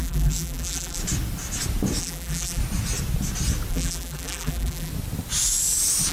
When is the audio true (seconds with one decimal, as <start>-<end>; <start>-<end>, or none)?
1.0-2.0; 2.6-3.7; 4.9-6.1